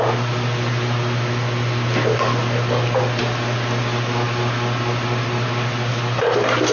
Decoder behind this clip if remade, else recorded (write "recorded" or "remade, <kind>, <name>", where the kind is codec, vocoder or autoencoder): recorded